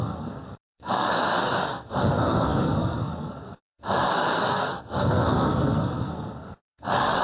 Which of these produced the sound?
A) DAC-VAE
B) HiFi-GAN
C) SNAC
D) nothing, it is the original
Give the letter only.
C